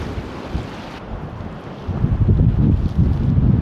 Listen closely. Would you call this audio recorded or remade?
recorded